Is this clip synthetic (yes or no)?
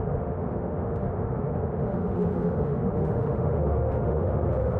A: yes